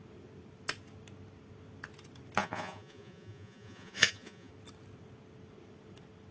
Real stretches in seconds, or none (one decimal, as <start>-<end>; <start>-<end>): 0.0-2.4; 4.5-6.3

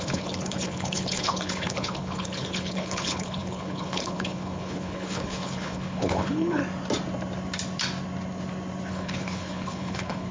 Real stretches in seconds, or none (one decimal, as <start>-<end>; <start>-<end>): 6.6-8.9

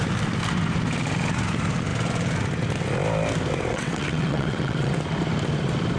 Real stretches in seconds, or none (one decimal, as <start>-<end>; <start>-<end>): 0.0-3.7; 4.9-6.0

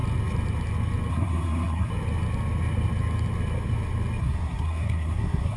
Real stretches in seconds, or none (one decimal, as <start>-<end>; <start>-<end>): 0.0-1.1; 1.9-4.2

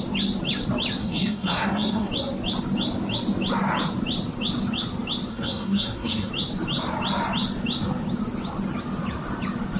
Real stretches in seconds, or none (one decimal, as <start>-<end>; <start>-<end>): 0.0-1.0; 2.1-5.3; 6.3-9.8

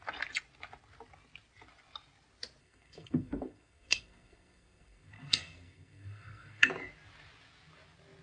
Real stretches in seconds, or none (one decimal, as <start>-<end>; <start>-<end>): 0.0-2.6; 6.7-8.2